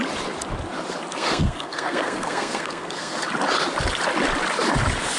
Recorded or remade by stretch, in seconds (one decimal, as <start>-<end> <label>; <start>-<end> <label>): 0.0-1.1 recorded; 1.1-3.2 remade; 3.2-5.2 recorded